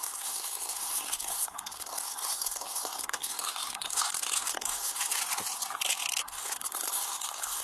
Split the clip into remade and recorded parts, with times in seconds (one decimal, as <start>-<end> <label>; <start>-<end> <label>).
0.0-5.2 remade; 5.2-6.2 recorded; 6.2-7.6 remade

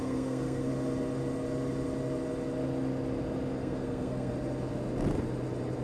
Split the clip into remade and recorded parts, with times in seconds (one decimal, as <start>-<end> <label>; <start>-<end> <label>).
0.0-0.7 remade; 0.7-3.6 recorded; 3.6-4.3 remade; 4.3-5.8 recorded